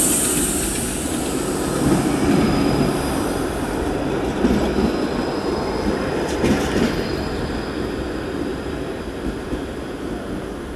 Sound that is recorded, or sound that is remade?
recorded